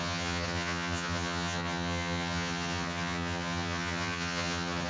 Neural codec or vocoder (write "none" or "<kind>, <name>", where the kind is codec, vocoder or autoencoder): vocoder, HiFi-GAN